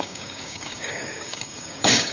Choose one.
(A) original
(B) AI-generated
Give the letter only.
B